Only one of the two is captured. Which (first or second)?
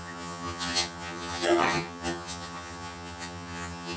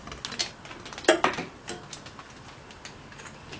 second